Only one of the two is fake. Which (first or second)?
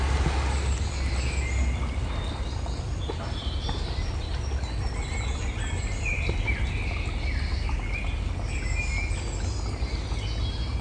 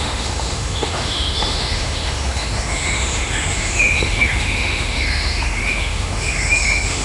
second